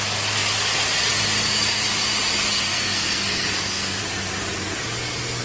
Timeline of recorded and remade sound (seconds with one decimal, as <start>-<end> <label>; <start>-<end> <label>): 0.0-2.7 recorded; 2.7-4.0 remade; 4.0-5.4 recorded